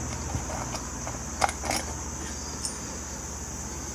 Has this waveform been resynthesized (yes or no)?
no